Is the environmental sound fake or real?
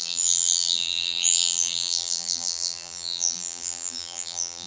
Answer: fake